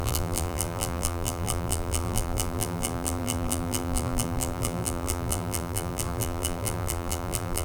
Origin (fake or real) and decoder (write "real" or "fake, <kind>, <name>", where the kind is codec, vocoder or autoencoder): fake, vocoder, BigVGAN v2